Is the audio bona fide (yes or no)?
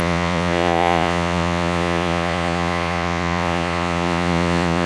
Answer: no